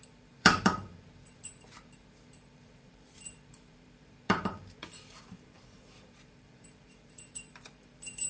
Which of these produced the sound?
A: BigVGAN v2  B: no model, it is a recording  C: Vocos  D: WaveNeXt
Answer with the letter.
A